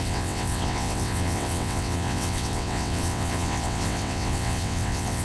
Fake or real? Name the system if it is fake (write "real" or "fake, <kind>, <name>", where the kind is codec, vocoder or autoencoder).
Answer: fake, vocoder, WaveNeXt